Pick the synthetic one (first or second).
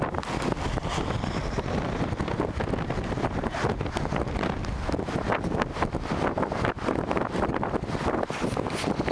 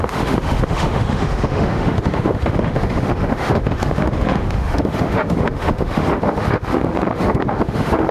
second